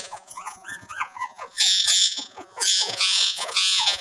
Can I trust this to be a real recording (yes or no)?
no